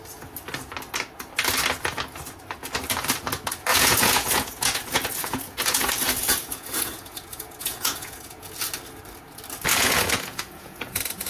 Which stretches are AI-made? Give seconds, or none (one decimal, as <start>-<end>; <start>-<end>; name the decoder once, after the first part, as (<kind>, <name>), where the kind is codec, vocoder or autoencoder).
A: 3.7-8.5 (vocoder, Vocos); 9.7-11.3